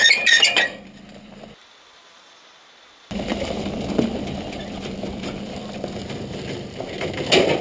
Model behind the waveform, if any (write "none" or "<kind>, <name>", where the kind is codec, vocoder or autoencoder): none